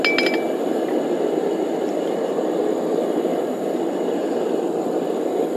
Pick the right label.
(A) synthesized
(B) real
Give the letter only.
B